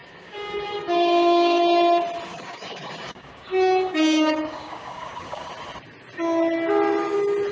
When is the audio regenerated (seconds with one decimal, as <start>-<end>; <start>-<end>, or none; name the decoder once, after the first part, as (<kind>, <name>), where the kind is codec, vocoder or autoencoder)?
0.0-1.6 (codec, DAC); 2.3-5.5